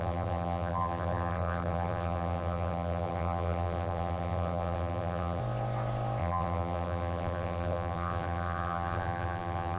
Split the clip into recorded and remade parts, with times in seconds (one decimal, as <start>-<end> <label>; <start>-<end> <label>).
0.0-5.4 remade; 5.4-6.2 recorded; 6.2-9.8 remade